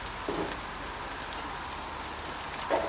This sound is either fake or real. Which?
real